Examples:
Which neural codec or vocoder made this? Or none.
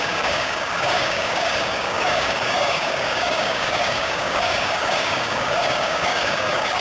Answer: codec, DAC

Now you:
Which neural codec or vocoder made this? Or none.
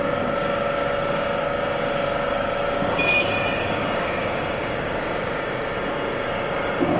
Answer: codec, DAC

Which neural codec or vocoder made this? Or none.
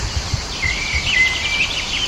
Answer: none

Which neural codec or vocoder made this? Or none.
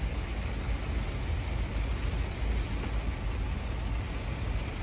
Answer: none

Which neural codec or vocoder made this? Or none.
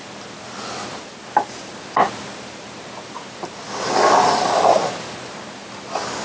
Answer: none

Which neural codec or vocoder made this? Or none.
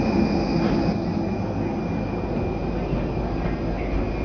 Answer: none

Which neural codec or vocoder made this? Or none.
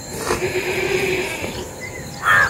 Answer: none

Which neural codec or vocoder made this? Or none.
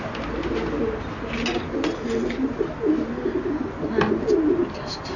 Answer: none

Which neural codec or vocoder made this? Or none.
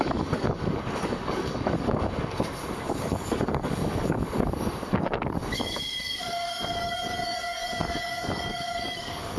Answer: codec, DAC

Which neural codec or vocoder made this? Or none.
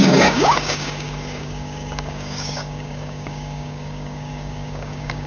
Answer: codec, DAC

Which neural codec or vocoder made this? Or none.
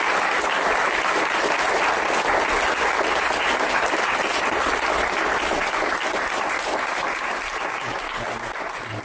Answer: none